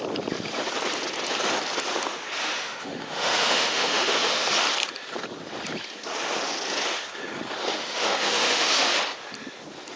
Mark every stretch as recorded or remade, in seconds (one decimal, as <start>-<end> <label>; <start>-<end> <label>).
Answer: 0.0-2.4 recorded; 2.4-4.5 remade; 4.5-7.6 recorded; 7.6-9.0 remade; 9.0-10.0 recorded